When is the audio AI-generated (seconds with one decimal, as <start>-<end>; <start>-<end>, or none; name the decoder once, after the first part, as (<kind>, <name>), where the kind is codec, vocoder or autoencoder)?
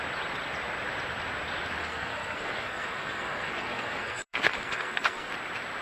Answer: 1.8-5.3 (codec, SNAC)